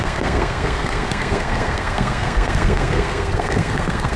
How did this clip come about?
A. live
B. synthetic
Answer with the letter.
B